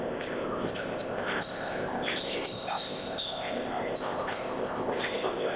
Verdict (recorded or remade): remade